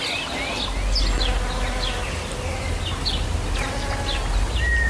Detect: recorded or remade recorded